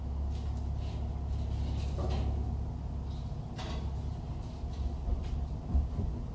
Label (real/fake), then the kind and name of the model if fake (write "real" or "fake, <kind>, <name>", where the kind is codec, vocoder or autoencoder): real